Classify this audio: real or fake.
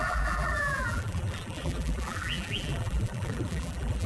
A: fake